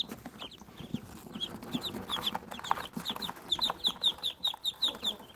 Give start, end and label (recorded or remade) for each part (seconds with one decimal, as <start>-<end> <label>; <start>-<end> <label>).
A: 0.0-2.1 recorded; 2.1-4.7 remade; 4.7-5.4 recorded